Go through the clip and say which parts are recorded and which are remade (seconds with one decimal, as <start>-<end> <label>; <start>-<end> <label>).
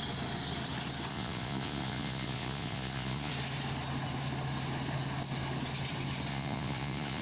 0.0-1.1 recorded; 1.1-3.3 remade; 3.3-6.3 recorded; 6.3-7.2 remade